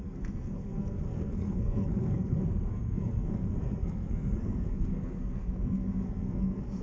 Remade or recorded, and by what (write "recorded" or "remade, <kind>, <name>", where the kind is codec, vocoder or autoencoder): remade, codec, SNAC